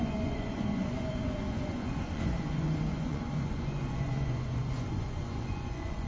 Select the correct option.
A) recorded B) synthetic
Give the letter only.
B